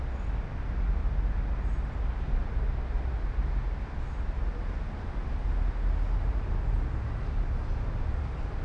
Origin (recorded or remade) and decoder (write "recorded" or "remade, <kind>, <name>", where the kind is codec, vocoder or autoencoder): recorded